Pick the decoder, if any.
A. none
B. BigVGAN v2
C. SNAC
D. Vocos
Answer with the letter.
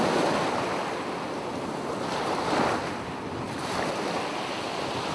A